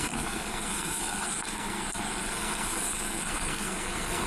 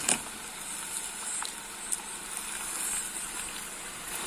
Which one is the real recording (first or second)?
second